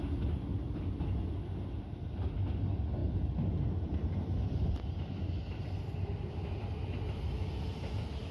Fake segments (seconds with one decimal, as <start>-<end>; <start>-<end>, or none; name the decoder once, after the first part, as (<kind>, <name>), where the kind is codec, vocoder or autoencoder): none

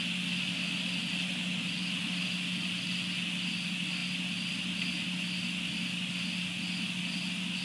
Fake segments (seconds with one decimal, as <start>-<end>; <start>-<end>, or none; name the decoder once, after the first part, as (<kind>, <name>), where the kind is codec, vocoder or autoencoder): none

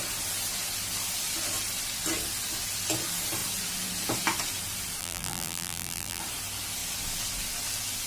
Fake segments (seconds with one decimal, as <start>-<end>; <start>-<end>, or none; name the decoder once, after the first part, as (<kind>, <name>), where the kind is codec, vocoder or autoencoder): 5.0-6.2 (vocoder, BigVGAN v2)

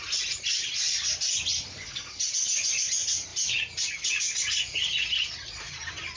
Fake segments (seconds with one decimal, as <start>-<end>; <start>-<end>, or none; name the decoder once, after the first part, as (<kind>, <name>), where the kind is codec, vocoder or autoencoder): none

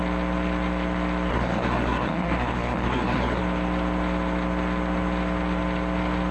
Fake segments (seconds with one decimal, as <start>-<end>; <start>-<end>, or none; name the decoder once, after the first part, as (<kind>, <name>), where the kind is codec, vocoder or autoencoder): 1.3-3.4 (codec, SNAC)

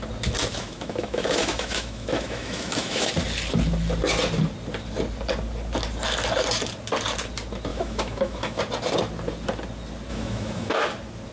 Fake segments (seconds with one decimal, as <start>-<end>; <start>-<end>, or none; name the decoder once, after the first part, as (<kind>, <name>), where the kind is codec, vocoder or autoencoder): 0.5-3.1 (autoencoder, DAC-VAE); 7.7-8.6; 10.1-10.7